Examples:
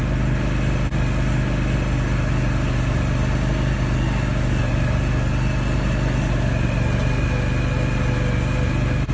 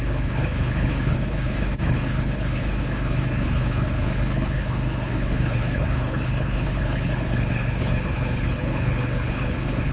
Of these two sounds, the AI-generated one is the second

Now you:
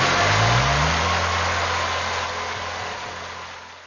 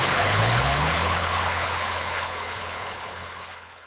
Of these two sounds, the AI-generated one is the second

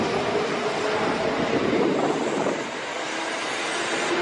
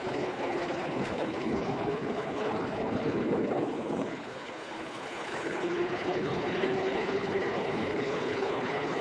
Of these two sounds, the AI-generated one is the second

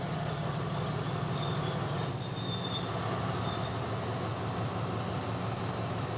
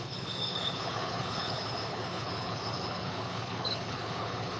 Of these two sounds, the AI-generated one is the second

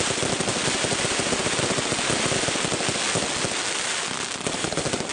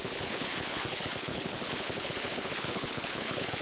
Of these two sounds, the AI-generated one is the second